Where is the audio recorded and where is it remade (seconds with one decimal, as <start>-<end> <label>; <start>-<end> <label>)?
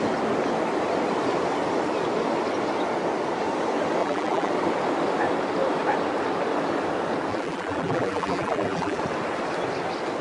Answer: 0.0-4.0 recorded; 4.0-4.5 remade; 4.5-7.3 recorded; 7.3-9.0 remade; 9.0-10.2 recorded